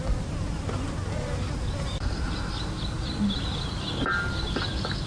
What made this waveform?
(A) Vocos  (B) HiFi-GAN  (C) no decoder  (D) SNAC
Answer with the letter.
C